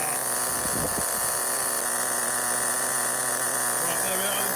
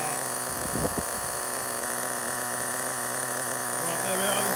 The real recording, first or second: first